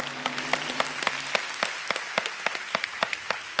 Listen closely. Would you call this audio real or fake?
real